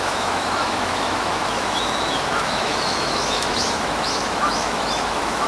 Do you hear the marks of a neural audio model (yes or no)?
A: yes